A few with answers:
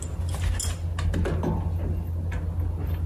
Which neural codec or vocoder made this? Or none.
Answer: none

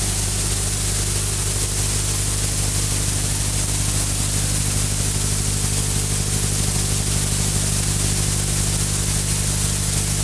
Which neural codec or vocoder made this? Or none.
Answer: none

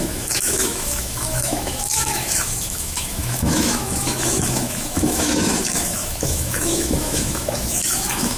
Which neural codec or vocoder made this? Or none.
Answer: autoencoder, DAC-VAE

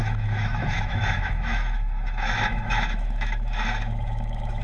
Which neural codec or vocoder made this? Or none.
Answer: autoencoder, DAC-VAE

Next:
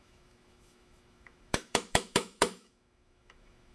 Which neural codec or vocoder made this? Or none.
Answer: autoencoder, DAC-VAE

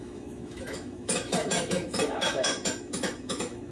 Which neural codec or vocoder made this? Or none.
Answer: autoencoder, DAC-VAE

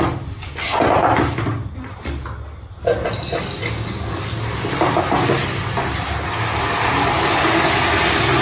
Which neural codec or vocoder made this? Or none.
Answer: none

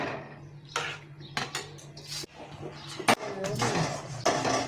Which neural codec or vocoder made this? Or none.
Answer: none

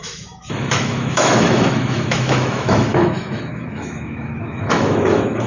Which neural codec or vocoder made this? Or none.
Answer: autoencoder, DAC-VAE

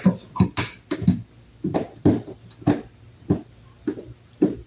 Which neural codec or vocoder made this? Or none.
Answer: none